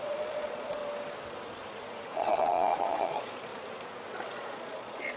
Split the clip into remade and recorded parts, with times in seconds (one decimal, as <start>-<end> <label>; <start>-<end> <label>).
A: 0.0-0.8 remade; 0.8-2.1 recorded; 2.1-3.5 remade; 3.5-4.1 recorded; 4.1-5.2 remade